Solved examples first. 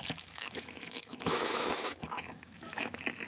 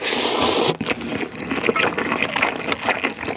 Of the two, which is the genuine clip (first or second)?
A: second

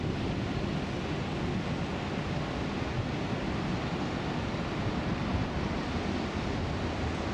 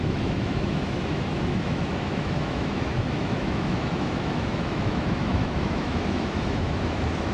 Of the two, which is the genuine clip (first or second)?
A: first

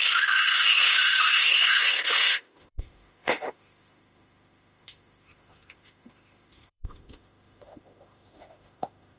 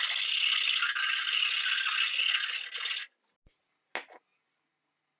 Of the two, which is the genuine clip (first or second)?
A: second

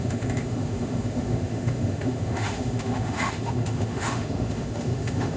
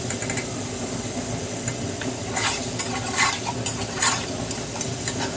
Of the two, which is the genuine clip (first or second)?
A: second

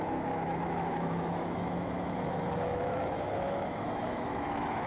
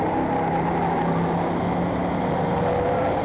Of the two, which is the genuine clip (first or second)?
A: second